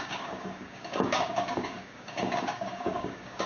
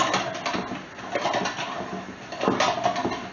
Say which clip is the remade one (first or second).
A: first